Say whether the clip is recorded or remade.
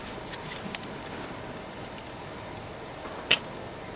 recorded